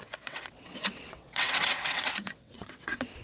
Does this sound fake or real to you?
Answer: fake